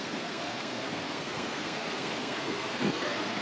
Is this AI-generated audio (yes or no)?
yes